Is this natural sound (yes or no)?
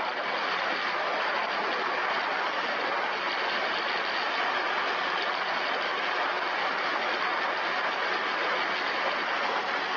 yes